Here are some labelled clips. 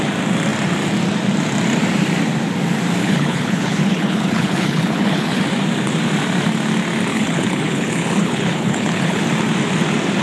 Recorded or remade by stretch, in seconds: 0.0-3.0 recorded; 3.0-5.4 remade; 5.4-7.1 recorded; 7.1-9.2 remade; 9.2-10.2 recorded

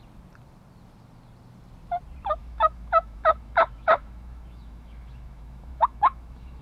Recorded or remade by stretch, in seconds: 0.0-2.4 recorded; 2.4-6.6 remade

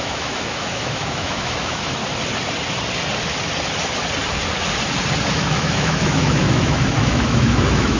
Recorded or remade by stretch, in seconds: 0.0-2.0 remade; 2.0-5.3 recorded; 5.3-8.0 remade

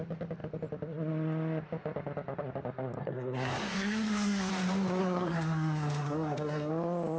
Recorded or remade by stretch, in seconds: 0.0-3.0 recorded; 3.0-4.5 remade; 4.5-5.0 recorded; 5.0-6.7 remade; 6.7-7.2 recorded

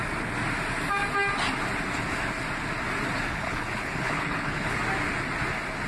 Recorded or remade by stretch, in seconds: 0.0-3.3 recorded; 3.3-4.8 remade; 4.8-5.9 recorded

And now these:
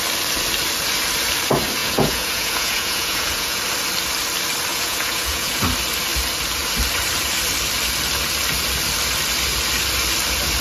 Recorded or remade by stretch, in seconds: 0.0-1.8 recorded; 1.8-3.6 remade; 3.6-4.7 recorded; 4.7-5.6 remade; 5.6-10.6 recorded

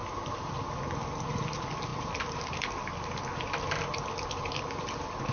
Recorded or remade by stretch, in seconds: 0.0-5.3 recorded

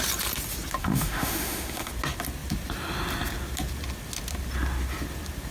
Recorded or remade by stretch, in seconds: 0.0-0.8 recorded; 0.8-1.9 remade; 1.9-5.5 recorded